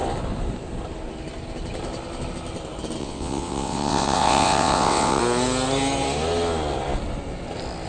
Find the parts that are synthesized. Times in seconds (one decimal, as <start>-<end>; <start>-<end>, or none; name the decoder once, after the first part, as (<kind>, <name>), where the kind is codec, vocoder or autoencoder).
3.0-5.2 (vocoder, WaveNeXt)